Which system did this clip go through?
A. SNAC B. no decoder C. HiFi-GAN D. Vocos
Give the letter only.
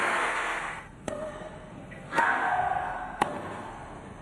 A